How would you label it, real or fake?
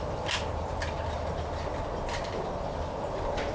real